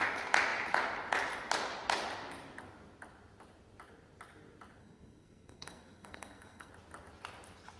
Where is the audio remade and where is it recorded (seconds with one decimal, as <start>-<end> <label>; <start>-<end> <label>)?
0.0-4.8 recorded; 4.8-6.7 remade; 6.7-7.8 recorded